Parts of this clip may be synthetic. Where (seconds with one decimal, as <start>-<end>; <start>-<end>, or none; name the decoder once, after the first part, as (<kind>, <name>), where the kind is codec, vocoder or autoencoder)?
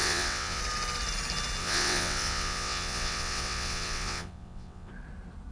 0.0-0.6 (vocoder, WaveNeXt); 1.6-4.9